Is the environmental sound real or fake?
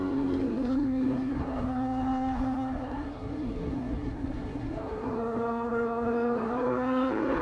fake